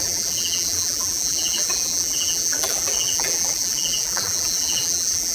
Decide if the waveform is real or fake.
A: fake